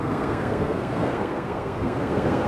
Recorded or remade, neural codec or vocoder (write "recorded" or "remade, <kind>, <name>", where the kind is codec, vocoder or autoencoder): remade, codec, SNAC